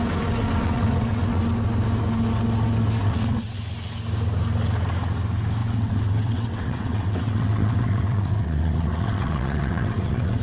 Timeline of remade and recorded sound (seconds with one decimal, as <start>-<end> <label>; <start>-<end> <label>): 0.0-0.4 recorded; 0.4-1.4 remade; 1.4-3.0 recorded; 3.0-3.6 remade; 3.6-5.6 recorded; 5.6-10.4 remade